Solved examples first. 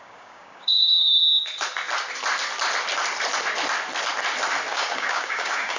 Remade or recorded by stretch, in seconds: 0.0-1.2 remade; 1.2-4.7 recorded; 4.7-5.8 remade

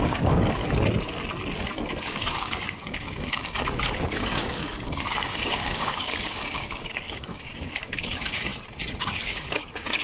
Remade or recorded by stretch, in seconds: 0.0-0.6 remade; 0.6-2.0 recorded; 2.0-8.5 remade; 8.5-9.0 recorded; 9.0-10.0 remade

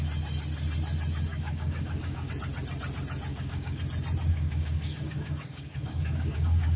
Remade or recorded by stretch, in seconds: 0.0-1.3 recorded; 1.3-2.3 remade; 2.3-3.3 recorded; 3.3-3.8 remade; 3.8-4.3 recorded; 4.3-6.8 remade

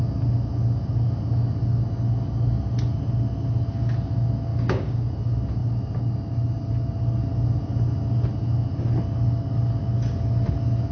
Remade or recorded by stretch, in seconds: 0.0-4.5 recorded; 4.5-5.1 remade; 5.1-10.9 recorded

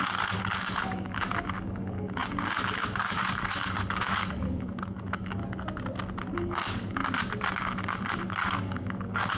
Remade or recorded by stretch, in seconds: 0.0-5.4 remade; 5.4-6.3 recorded; 6.3-7.0 remade; 7.0-7.5 recorded; 7.5-9.4 remade

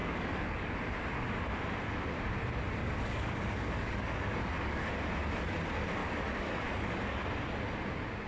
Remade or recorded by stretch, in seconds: 0.0-0.7 remade; 0.7-2.8 recorded; 2.8-4.9 remade; 4.9-6.0 recorded; 6.0-7.2 remade; 7.2-8.3 recorded

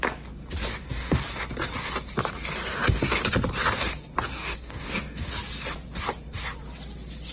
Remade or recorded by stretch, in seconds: 0.0-0.7 recorded; 0.7-1.2 remade; 1.2-4.4 recorded; 4.4-5.3 remade; 5.3-7.3 recorded

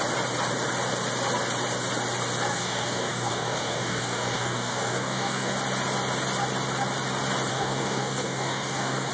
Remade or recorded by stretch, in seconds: 0.0-2.5 recorded; 2.5-5.5 remade; 5.5-7.5 recorded; 7.5-9.1 remade